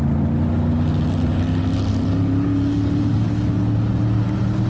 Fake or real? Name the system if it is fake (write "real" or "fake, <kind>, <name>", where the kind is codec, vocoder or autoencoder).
real